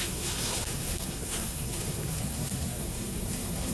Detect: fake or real fake